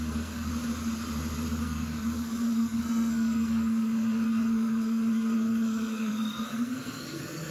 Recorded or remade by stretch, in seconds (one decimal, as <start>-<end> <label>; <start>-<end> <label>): 0.0-0.5 remade; 0.5-1.6 recorded; 1.6-7.5 remade